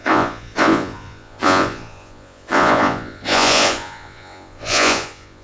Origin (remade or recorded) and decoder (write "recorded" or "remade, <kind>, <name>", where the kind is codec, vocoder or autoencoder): remade, vocoder, Vocos